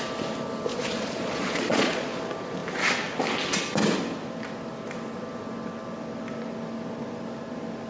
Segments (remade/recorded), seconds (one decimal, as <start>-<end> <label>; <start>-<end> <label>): 0.0-0.7 recorded; 0.7-2.2 remade; 2.2-7.9 recorded